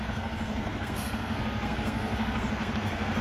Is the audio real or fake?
fake